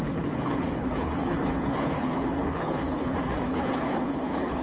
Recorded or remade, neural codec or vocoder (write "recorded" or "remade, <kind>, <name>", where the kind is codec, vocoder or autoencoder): remade, codec, HILCodec